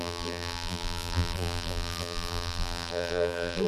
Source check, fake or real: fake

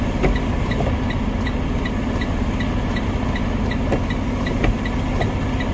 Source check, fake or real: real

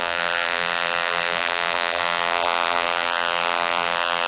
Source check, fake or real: fake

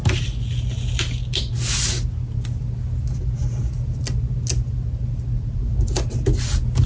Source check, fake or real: real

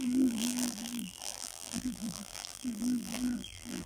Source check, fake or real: fake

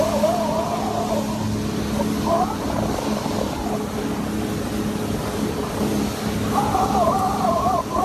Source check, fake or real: real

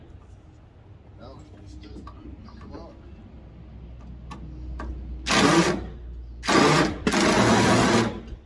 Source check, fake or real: real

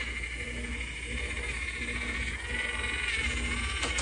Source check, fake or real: real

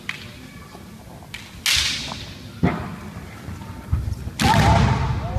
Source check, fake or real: real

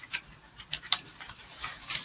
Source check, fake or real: fake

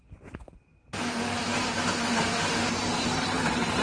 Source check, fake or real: real